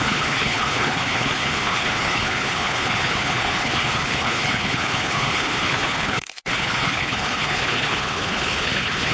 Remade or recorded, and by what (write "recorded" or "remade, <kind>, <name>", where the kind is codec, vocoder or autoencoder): remade, codec, HILCodec